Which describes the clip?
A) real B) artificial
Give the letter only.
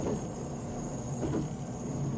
A